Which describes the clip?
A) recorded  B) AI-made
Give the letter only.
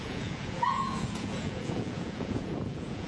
B